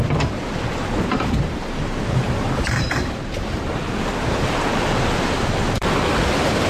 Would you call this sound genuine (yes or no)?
no